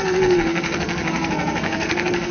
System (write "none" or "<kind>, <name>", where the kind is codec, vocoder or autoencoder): codec, SNAC